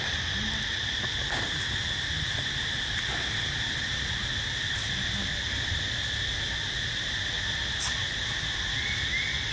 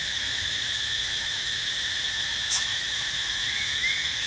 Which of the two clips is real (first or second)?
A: first